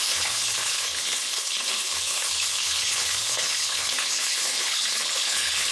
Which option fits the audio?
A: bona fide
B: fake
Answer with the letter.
B